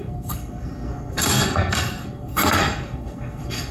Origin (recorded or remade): remade